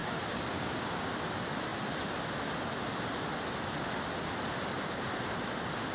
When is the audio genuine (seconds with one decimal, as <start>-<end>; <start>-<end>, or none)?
1.1-5.9